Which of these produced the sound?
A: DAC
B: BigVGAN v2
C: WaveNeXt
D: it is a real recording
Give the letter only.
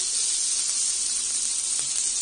D